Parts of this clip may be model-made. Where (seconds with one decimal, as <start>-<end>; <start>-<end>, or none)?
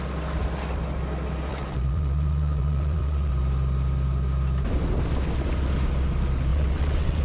1.5-3.3; 6.5-7.2